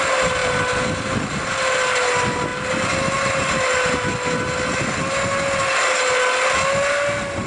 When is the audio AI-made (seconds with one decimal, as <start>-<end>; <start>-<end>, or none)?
none